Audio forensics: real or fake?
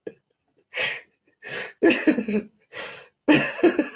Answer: real